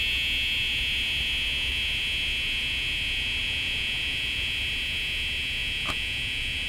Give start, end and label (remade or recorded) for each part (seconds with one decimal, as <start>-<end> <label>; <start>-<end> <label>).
0.0-3.4 recorded; 3.4-4.6 remade; 4.6-5.6 recorded; 5.6-6.7 remade